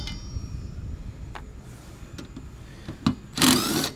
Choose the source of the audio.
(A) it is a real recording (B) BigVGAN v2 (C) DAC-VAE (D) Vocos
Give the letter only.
A